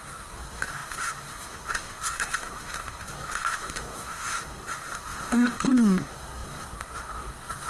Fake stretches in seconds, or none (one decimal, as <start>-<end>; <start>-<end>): 0.0-7.7